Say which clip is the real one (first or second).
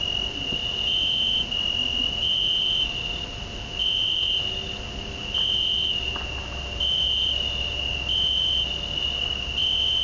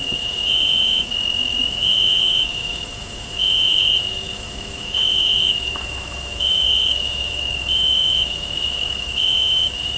first